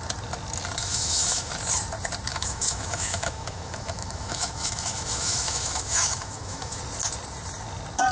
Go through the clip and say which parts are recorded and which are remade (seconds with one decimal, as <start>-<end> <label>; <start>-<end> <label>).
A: 0.0-0.9 recorded; 0.9-1.5 remade; 1.5-2.3 recorded; 2.3-6.8 remade; 6.8-8.1 recorded